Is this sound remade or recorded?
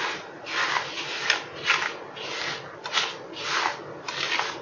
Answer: recorded